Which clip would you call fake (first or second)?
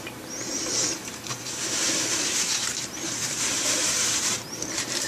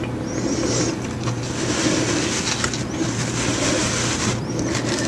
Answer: first